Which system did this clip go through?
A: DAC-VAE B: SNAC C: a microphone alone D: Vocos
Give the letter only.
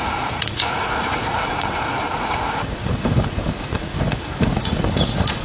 D